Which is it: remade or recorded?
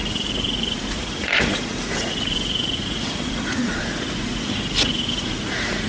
remade